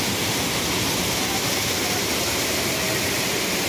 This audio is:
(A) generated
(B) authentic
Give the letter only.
B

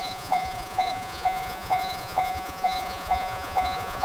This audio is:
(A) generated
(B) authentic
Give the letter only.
A